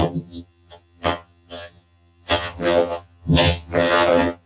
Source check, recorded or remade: remade